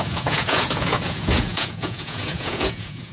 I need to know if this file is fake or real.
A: fake